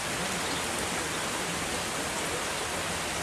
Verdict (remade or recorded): recorded